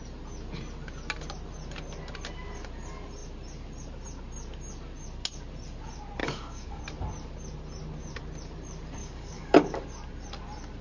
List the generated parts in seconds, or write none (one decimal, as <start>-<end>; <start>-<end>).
6.2-6.8; 9.0-9.8